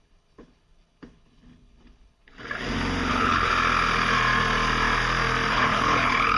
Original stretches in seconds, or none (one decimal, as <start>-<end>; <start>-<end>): 2.3-3.1; 3.5-5.5